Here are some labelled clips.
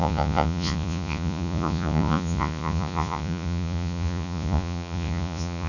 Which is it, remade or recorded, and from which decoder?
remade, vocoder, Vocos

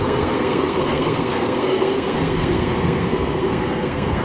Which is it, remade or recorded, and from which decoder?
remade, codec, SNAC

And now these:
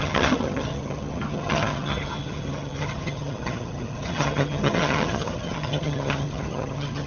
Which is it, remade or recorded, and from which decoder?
remade, vocoder, HiFi-GAN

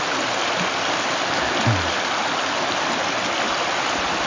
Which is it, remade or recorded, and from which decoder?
recorded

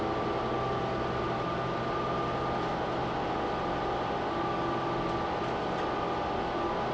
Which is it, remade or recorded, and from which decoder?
recorded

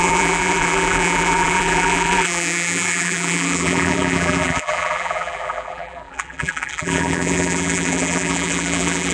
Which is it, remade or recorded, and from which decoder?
remade, vocoder, BigVGAN v2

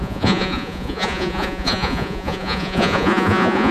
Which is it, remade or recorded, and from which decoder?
remade, vocoder, Vocos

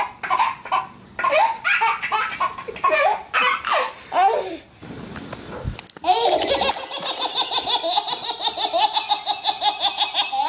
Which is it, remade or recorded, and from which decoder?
recorded